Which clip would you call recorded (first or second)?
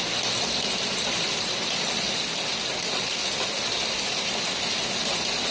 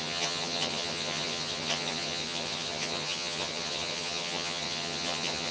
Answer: first